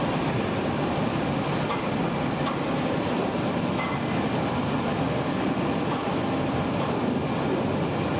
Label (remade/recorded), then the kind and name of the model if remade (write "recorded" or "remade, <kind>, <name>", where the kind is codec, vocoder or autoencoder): recorded